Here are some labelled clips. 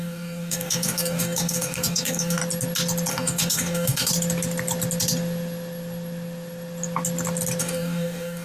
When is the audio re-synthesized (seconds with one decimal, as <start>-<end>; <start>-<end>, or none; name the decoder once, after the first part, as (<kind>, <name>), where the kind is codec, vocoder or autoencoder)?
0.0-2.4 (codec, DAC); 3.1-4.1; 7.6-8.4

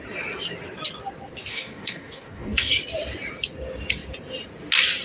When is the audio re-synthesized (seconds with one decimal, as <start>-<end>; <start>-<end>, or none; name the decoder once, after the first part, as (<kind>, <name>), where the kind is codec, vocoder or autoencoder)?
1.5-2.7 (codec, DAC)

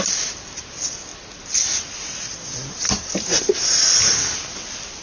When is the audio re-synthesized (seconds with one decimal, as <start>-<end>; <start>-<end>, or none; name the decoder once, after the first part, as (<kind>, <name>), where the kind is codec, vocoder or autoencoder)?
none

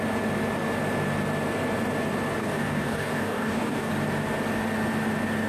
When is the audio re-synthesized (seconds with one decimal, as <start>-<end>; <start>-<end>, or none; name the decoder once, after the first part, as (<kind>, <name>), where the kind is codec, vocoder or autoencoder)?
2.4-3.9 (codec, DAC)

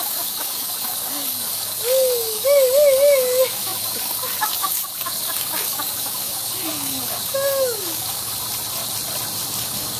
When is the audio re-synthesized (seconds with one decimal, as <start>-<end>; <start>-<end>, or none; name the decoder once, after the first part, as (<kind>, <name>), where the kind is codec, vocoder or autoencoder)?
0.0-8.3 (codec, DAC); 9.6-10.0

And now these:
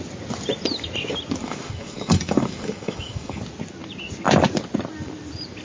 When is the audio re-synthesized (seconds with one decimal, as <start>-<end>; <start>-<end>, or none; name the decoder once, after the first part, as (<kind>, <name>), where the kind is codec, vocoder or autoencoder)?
1.4-3.4 (codec, DAC)

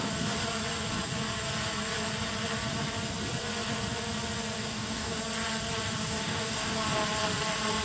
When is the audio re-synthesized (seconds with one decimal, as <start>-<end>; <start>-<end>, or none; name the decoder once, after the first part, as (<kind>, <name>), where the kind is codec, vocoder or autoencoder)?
4.6-5.2 (codec, DAC); 6.0-6.8